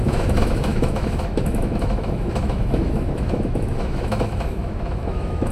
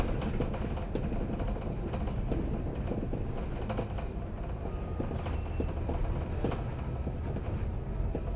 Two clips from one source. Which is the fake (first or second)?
first